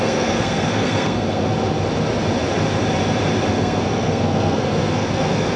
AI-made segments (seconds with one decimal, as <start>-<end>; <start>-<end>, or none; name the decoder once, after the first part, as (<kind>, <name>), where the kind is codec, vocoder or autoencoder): 0.0-1.5 (codec, SNAC); 3.5-5.6